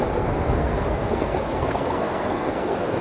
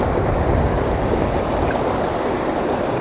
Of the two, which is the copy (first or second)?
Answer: first